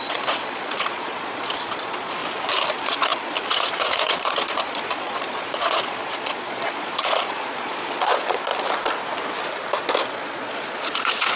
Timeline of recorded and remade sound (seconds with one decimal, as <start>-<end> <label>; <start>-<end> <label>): 0.0-2.2 remade; 2.2-2.7 recorded; 2.7-8.5 remade; 8.5-10.1 recorded; 10.1-11.4 remade